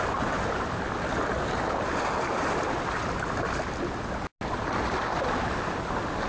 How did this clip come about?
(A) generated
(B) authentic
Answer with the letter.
B